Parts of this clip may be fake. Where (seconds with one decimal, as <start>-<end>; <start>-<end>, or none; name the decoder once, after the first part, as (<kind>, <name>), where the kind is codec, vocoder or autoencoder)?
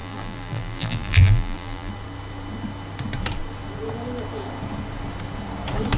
0.0-1.9 (vocoder, BigVGAN v2)